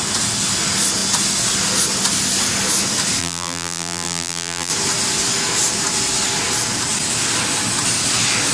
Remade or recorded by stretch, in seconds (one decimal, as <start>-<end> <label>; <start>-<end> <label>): 0.0-3.2 recorded; 3.2-4.7 remade; 4.7-8.5 recorded